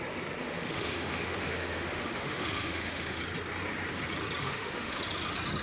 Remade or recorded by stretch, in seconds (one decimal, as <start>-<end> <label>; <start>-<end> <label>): 0.0-0.4 recorded; 0.4-3.2 remade; 3.2-4.4 recorded; 4.4-5.0 remade; 5.0-5.6 recorded